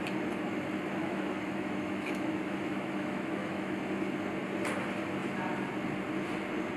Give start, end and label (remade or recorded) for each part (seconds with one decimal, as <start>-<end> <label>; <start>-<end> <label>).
0.0-1.0 recorded; 1.0-3.8 remade; 3.8-6.8 recorded